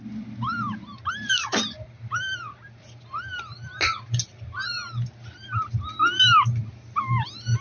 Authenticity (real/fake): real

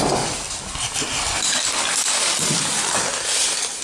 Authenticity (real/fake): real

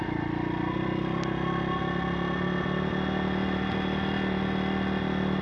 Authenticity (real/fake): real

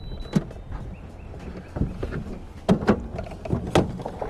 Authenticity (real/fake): real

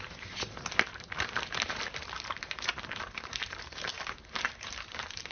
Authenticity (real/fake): fake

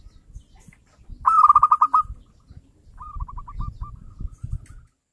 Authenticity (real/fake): real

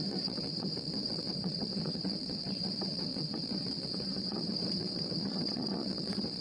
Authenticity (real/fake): fake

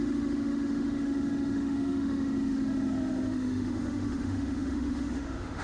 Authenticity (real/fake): fake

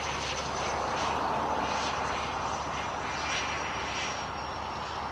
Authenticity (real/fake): real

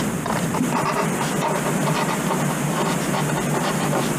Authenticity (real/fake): fake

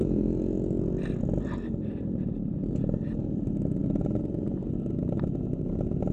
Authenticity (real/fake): real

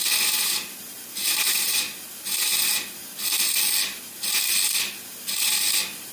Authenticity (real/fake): real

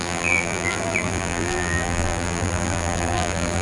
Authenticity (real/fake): fake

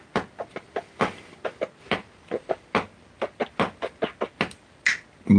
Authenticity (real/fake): real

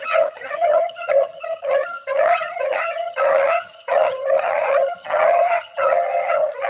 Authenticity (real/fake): fake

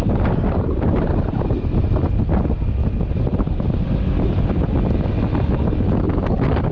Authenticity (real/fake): real